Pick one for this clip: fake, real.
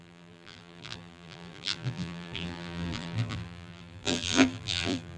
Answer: fake